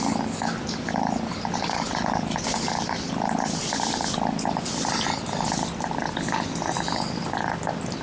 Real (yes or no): yes